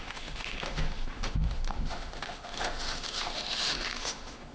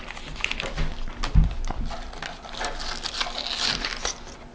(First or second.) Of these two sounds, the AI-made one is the first